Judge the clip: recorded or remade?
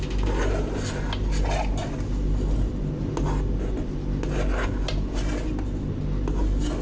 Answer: recorded